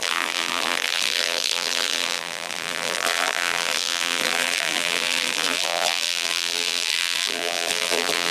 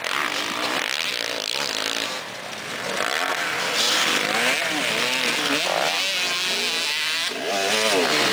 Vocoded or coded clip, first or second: first